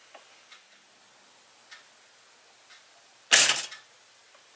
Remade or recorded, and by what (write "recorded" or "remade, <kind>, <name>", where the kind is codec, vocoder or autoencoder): recorded